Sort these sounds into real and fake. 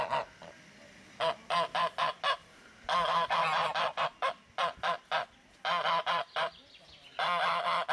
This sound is real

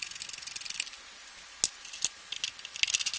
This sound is real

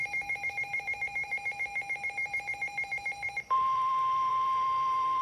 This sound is fake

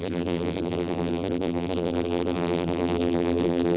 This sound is fake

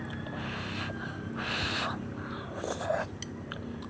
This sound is real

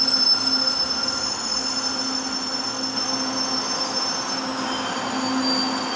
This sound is real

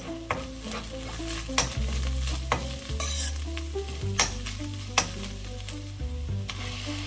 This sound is real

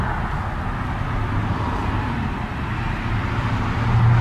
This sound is real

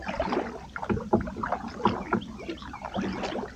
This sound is real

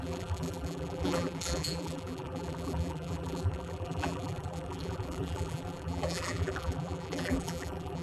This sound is fake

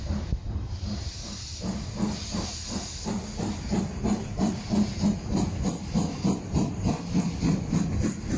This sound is real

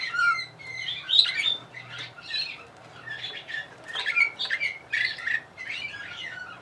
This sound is fake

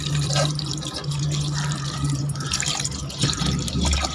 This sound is fake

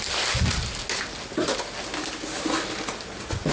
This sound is real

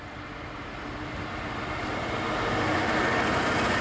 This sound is real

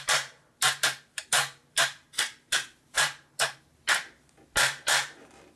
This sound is fake